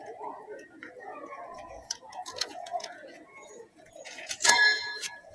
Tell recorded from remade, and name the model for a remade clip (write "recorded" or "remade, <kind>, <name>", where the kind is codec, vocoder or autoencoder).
remade, vocoder, Vocos